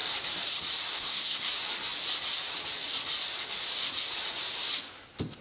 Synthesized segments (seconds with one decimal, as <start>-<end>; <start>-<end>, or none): 0.9-1.5